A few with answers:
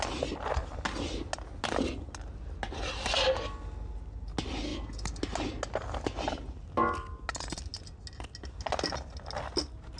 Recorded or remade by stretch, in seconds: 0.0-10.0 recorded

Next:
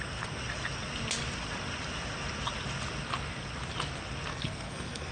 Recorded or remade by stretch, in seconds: 0.0-4.3 recorded; 4.3-5.1 remade

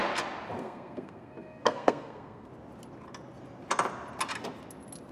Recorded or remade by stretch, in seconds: 0.0-0.6 recorded; 0.6-2.5 remade; 2.5-5.1 recorded

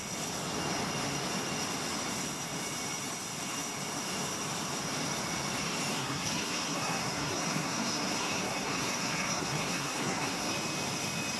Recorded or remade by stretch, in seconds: 0.0-5.9 recorded; 5.9-10.5 remade; 10.5-11.4 recorded

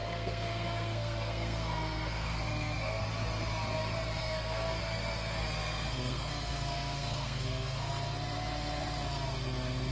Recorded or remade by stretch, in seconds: 0.0-3.0 remade; 3.0-4.2 recorded; 4.2-4.8 remade; 4.8-5.6 recorded; 5.6-7.9 remade; 7.9-9.9 recorded

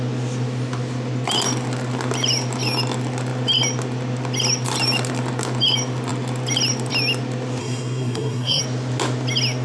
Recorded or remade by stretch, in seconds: 0.0-7.6 recorded; 7.6-8.6 remade; 8.6-9.6 recorded

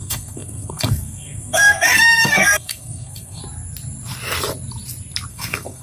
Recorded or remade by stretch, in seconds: 0.0-3.4 remade; 3.4-5.3 recorded; 5.3-5.8 remade

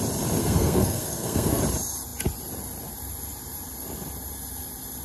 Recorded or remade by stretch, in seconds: 0.0-0.4 recorded; 0.4-1.6 remade; 1.6-5.0 recorded